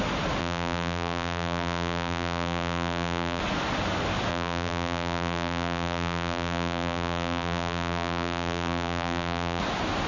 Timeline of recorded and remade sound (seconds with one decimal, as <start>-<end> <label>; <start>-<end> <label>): 0.0-0.4 recorded; 0.4-3.4 remade; 3.4-4.3 recorded; 4.3-9.6 remade; 9.6-10.1 recorded